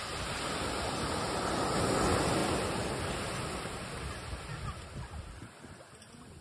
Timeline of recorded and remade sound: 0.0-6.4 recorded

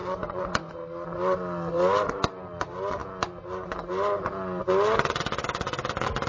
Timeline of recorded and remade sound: 0.0-0.7 remade; 0.7-6.3 recorded

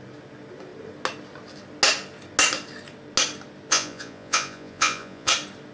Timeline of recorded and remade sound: 0.0-3.7 recorded; 3.7-5.3 remade; 5.3-5.7 recorded

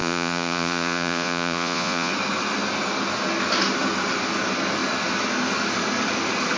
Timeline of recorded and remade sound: 0.0-2.1 remade; 2.1-6.6 recorded

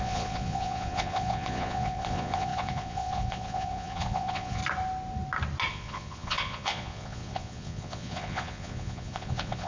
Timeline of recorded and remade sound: 0.0-4.6 remade; 4.6-5.7 recorded; 5.7-9.7 remade

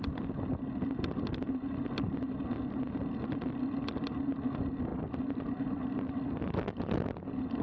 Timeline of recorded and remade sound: 0.0-7.6 recorded

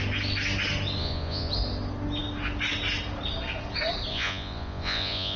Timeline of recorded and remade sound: 0.0-1.0 recorded; 1.0-1.5 remade; 1.5-4.1 recorded; 4.1-5.4 remade

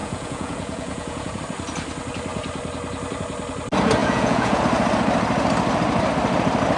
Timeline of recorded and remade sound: 0.0-1.4 remade; 1.4-4.0 recorded; 4.0-4.6 remade; 4.6-6.8 recorded